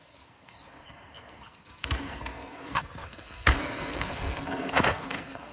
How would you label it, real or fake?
fake